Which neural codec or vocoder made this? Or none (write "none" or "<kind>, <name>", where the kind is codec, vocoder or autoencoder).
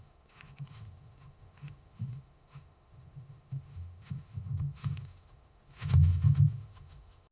autoencoder, DAC-VAE